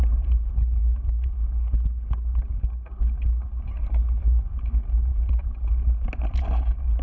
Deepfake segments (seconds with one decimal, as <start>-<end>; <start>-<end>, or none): none